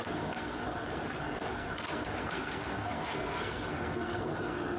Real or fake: fake